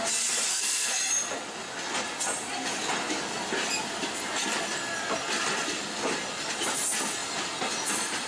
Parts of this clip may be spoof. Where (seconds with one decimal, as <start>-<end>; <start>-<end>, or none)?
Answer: 0.5-1.0